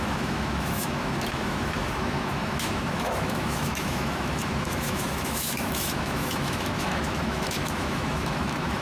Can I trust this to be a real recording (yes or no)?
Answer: no